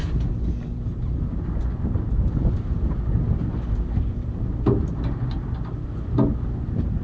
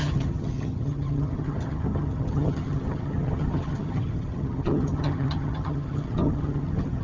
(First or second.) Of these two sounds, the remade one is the second